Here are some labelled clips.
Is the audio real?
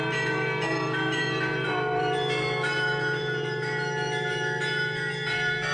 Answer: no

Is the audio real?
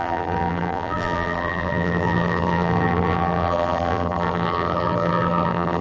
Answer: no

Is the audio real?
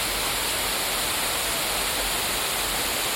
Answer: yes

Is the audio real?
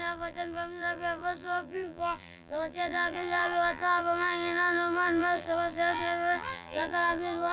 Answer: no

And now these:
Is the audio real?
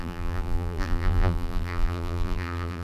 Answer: no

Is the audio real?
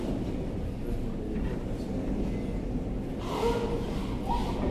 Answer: yes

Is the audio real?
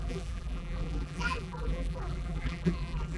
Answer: no